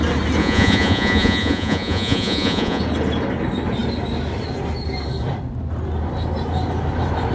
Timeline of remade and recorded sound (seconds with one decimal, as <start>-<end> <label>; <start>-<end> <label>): 0.0-0.4 recorded; 0.4-2.8 remade; 2.8-7.3 recorded